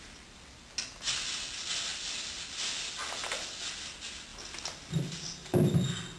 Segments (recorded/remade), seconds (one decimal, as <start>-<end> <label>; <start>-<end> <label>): 0.0-6.2 recorded

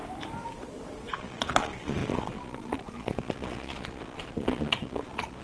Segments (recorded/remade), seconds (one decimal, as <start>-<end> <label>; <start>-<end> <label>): 0.0-1.1 recorded; 1.1-5.4 remade

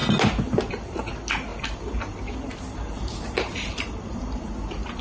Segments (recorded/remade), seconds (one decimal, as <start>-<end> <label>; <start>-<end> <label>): 0.0-1.5 recorded; 1.5-4.5 remade; 4.5-5.0 recorded

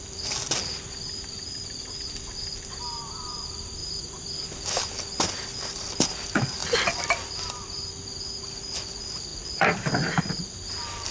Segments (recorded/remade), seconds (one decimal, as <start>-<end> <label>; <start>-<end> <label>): 0.0-3.8 recorded; 3.8-4.8 remade; 4.8-6.6 recorded; 6.6-7.6 remade; 7.6-9.3 recorded; 9.3-10.2 remade; 10.2-11.1 recorded

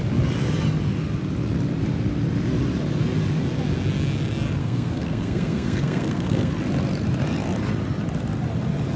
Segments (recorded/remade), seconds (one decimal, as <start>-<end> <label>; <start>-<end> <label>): 0.0-4.6 recorded; 4.6-6.5 remade; 6.5-9.0 recorded

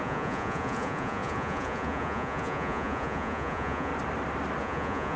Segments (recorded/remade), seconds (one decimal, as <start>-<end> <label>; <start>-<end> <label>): 0.0-3.9 remade; 3.9-4.6 recorded; 4.6-5.2 remade

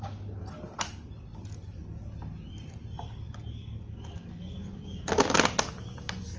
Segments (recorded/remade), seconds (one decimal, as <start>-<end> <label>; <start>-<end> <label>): 0.0-1.3 remade; 1.3-5.1 recorded; 5.1-6.4 remade

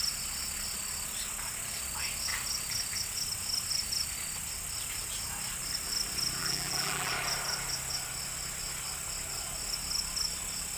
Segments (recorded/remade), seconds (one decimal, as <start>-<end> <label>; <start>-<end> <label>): 0.0-6.4 recorded; 6.4-7.1 remade; 7.1-10.8 recorded